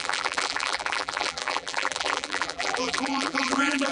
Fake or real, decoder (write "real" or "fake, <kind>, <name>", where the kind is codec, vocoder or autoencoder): fake, vocoder, BigVGAN v2